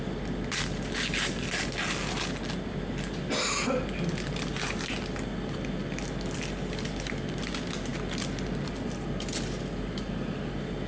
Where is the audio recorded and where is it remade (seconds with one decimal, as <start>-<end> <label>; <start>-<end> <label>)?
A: 0.0-10.9 recorded